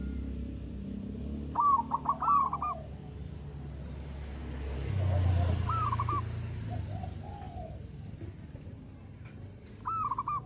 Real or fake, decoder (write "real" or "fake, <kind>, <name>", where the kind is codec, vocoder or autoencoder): real